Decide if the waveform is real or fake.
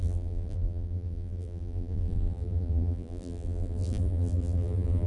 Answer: fake